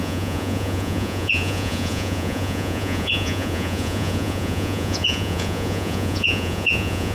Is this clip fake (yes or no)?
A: yes